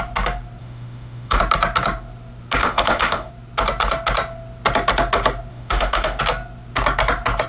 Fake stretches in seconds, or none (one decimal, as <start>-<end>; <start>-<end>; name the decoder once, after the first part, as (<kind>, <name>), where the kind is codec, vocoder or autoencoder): 0.6-1.4 (autoencoder, DAC-VAE); 2.6-3.3; 5.5-6.2